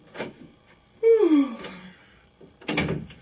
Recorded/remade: recorded